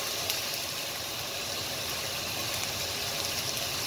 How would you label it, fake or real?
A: real